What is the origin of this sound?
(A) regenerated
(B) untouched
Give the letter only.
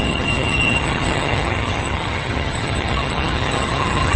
A